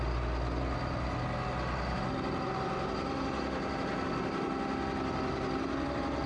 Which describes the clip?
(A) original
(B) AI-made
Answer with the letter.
A